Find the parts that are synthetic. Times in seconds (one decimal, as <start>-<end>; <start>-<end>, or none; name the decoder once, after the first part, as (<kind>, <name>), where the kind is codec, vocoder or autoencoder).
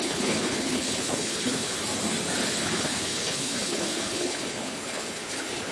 0.0-1.8 (codec, HILCodec); 2.5-5.7